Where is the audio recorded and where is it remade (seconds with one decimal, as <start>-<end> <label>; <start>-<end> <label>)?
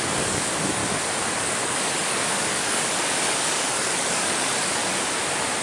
0.0-0.8 remade; 0.8-1.4 recorded; 1.4-4.8 remade; 4.8-5.6 recorded